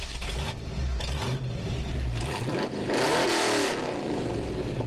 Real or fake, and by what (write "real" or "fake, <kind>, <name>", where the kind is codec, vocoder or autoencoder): real